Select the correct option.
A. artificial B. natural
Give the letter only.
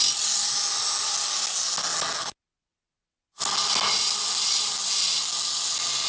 B